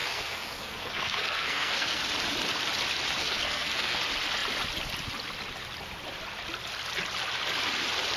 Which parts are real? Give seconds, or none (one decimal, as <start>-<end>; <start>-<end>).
2.0-3.2; 4.0-8.2